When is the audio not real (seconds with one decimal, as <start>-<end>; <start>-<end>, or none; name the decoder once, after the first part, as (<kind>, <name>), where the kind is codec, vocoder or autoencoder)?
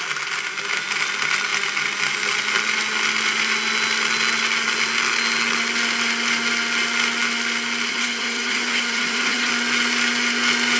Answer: 7.9-9.5 (vocoder, HiFi-GAN)